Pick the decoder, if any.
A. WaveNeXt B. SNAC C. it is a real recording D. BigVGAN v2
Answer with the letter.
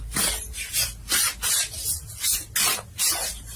C